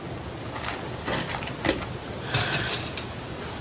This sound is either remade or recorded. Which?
recorded